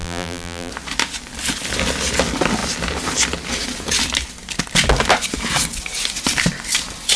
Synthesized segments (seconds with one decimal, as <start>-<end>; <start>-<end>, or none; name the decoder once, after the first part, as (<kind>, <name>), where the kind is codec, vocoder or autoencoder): 0.0-0.7 (vocoder, BigVGAN v2)